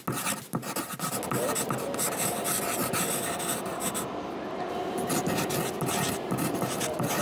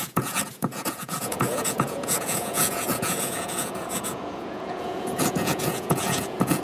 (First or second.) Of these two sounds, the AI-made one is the second